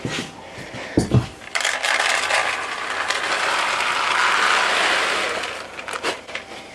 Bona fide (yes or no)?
yes